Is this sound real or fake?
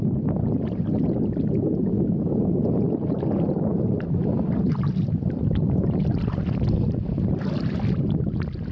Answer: real